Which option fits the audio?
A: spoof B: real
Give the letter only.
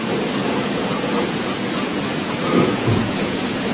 A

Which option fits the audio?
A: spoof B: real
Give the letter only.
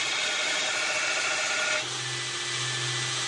B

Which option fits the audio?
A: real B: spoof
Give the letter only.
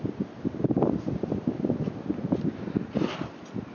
A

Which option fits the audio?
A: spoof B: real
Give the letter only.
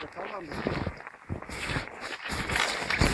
B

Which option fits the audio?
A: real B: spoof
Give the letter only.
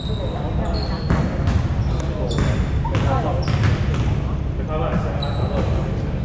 A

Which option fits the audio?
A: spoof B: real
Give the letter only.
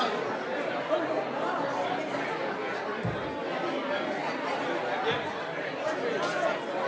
B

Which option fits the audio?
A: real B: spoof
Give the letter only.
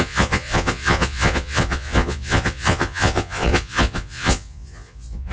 B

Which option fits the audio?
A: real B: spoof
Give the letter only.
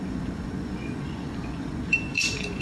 B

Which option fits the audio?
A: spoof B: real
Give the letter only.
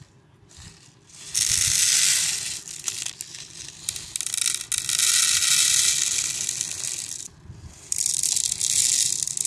B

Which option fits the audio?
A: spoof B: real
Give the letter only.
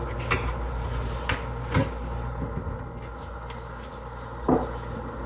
B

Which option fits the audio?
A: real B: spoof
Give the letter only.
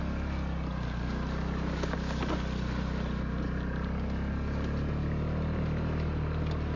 A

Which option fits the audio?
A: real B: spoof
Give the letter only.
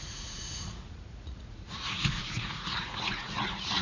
B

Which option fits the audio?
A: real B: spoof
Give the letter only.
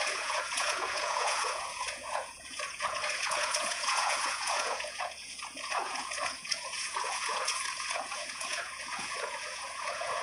B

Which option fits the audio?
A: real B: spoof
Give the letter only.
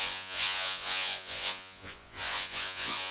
B